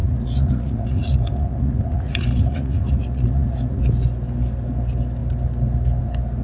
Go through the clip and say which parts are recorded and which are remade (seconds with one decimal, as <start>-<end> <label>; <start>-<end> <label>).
0.0-3.8 remade; 3.8-6.4 recorded